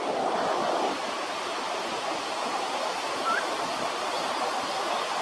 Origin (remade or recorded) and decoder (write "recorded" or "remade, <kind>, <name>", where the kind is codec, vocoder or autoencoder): recorded